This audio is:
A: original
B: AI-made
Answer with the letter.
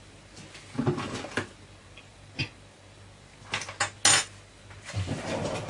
A